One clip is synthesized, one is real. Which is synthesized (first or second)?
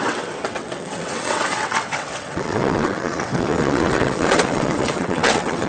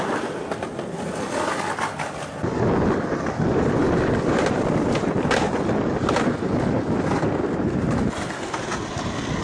first